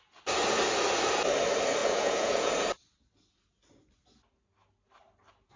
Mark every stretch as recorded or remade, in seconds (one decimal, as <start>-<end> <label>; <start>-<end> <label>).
0.0-1.8 recorded; 1.8-2.5 remade; 2.5-5.6 recorded

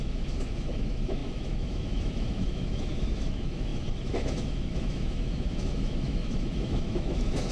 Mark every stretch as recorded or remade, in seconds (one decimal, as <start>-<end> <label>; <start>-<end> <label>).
0.0-7.5 remade

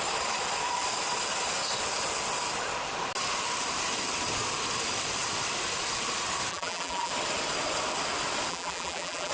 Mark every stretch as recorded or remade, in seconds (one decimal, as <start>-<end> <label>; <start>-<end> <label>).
0.0-6.5 recorded; 6.5-7.1 remade; 7.1-8.5 recorded; 8.5-9.3 remade

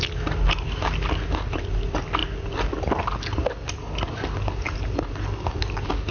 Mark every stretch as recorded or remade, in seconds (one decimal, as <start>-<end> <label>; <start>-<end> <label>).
0.0-6.1 recorded

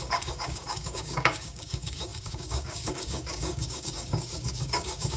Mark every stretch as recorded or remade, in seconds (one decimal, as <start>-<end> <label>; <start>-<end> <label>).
0.0-5.2 remade

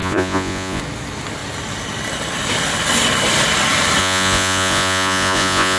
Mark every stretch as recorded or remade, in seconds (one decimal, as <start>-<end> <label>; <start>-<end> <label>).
0.0-0.8 remade; 0.8-4.0 recorded; 4.0-5.8 remade

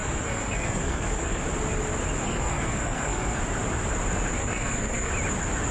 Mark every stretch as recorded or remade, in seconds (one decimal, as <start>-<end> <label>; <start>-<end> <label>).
0.0-1.4 remade; 1.4-2.2 recorded; 2.2-3.4 remade; 3.4-4.4 recorded; 4.4-5.1 remade; 5.1-5.7 recorded